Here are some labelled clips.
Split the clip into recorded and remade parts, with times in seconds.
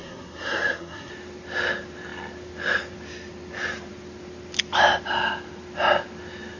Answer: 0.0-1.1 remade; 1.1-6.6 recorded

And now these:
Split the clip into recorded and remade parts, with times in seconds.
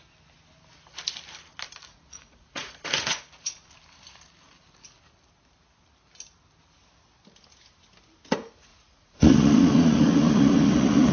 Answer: 0.0-1.9 recorded; 1.9-3.5 remade; 3.5-8.7 recorded; 8.7-11.1 remade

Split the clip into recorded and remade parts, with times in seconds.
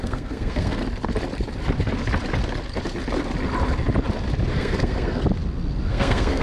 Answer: 0.0-0.8 remade; 0.8-4.5 recorded; 4.5-5.2 remade; 5.2-5.9 recorded; 5.9-6.4 remade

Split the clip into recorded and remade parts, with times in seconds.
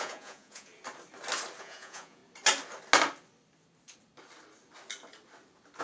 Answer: 0.0-0.7 remade; 0.7-1.6 recorded; 1.6-2.2 remade; 2.2-5.8 recorded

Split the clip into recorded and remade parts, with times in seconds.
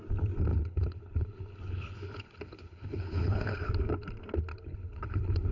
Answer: 0.0-0.5 recorded; 0.5-3.7 remade; 3.7-4.5 recorded; 4.5-5.5 remade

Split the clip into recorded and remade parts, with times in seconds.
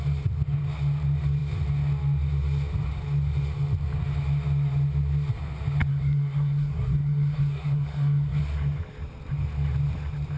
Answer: 0.0-5.9 recorded; 5.9-8.4 remade; 8.4-10.4 recorded